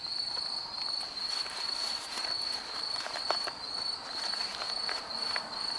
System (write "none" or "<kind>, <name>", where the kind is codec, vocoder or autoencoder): none